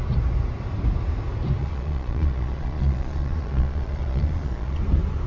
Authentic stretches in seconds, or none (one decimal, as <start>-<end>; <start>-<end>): 0.0-1.6; 4.8-5.3